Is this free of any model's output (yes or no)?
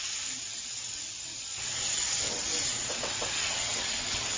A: no